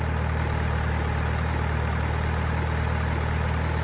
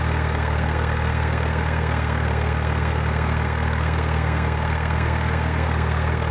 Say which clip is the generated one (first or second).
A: second